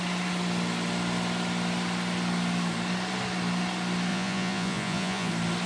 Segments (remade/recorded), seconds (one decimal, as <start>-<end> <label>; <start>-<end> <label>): 0.0-4.1 recorded; 4.1-5.3 remade; 5.3-5.7 recorded